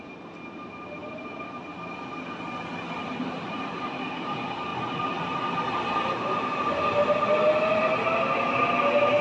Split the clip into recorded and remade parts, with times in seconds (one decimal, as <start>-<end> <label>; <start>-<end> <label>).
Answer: 0.0-3.0 recorded; 3.0-3.9 remade; 3.9-4.7 recorded; 4.7-5.2 remade; 5.2-9.2 recorded